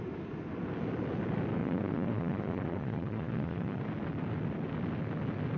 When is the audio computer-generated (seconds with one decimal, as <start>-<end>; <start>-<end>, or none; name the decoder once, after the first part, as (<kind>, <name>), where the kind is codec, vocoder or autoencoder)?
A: 1.6-3.8 (vocoder, Vocos)